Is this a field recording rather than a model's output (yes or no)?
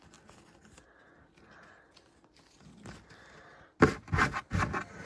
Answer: yes